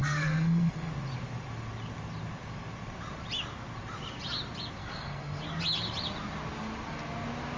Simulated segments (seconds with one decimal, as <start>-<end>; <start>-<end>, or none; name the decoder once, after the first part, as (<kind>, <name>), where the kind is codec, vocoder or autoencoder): 0.0-0.9 (codec, SNAC); 4.8-5.4